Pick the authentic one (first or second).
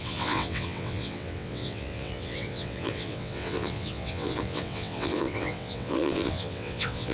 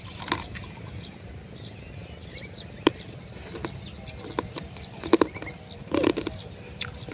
second